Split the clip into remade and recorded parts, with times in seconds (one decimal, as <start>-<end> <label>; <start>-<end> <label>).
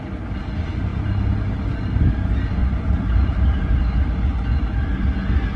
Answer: 0.0-2.6 recorded; 2.6-3.9 remade; 3.9-5.6 recorded